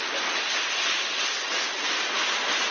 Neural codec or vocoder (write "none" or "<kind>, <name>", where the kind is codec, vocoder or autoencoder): none